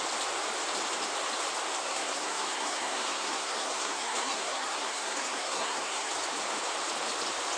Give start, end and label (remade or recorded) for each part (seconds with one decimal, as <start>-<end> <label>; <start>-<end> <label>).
0.0-1.8 recorded; 1.8-6.1 remade; 6.1-7.6 recorded